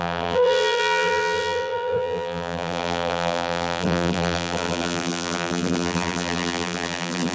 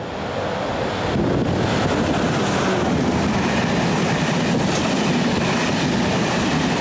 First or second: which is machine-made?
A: first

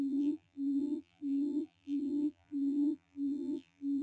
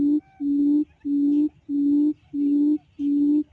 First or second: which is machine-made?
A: first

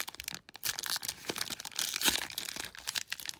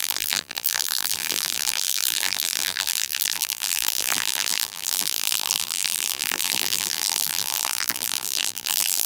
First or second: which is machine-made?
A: second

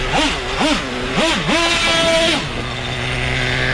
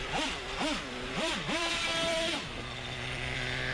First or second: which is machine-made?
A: second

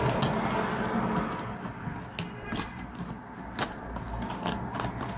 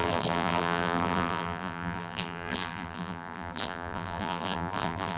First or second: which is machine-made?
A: second